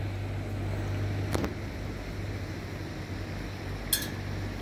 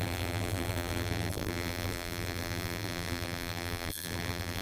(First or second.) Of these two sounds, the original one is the first